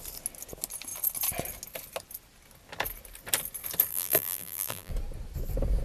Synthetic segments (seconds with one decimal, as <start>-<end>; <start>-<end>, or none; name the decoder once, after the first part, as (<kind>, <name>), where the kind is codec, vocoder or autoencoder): 3.9-4.9 (vocoder, BigVGAN v2)